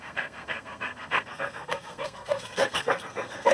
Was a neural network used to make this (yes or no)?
yes